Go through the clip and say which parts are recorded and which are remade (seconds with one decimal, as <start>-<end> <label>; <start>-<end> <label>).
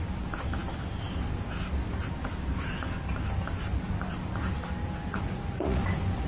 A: 0.0-5.1 recorded; 5.1-5.8 remade; 5.8-6.3 recorded